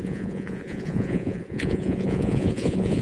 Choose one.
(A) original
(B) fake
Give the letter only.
B